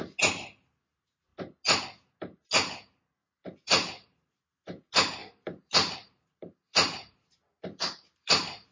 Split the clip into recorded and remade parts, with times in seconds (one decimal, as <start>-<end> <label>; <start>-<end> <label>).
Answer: 0.0-3.2 recorded; 3.2-4.4 remade; 4.4-5.2 recorded; 5.2-8.7 remade